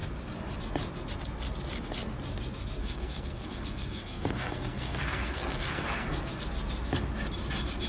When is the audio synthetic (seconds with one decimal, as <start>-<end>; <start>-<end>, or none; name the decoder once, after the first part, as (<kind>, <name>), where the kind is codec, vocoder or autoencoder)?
2.8-6.4 (codec, SNAC)

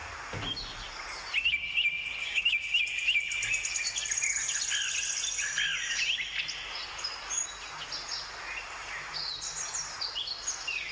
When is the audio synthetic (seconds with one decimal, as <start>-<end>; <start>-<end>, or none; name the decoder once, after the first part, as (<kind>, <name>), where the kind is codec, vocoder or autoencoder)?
2.2-2.8 (codec, DAC)

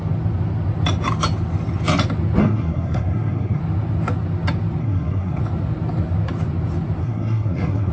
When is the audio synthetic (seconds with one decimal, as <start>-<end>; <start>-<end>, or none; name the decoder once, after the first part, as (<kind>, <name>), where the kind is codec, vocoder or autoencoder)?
2.4-3.6 (codec, SNAC); 4.8-5.4; 7.0-7.9

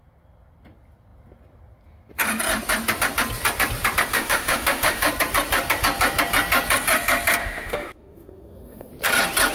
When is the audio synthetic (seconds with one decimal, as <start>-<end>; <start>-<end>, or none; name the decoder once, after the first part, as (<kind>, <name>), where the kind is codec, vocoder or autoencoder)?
4.1-5.1 (autoencoder, DAC-VAE); 7.4-8.9